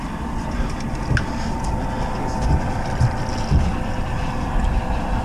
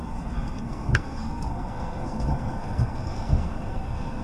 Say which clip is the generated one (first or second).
second